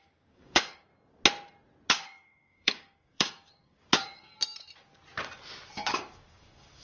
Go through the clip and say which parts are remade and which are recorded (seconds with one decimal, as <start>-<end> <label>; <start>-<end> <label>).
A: 0.0-0.9 remade; 0.9-1.9 recorded; 1.9-4.3 remade; 4.3-5.9 recorded; 5.9-6.8 remade